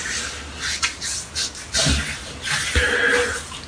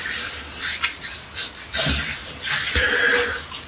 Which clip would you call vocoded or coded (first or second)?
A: second